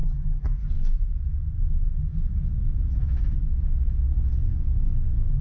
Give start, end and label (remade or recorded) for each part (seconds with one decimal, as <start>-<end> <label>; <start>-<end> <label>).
0.0-0.7 remade; 0.7-5.4 recorded